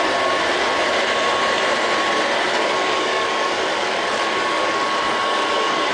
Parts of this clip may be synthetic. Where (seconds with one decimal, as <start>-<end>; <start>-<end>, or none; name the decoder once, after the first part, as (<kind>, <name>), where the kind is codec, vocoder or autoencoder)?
2.5-5.9 (codec, DAC)